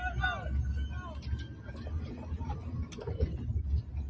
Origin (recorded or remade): recorded